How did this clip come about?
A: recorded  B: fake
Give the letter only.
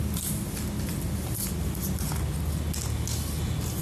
A